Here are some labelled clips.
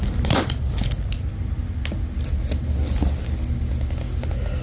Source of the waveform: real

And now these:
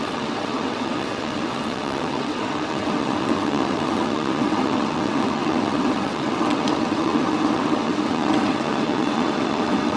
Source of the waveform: fake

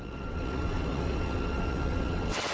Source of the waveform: fake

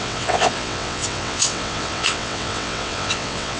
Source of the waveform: fake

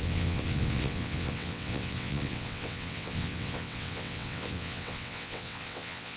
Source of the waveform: fake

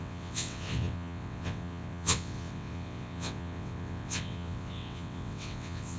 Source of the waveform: fake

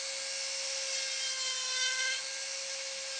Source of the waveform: real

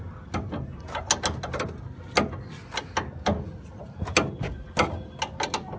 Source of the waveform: real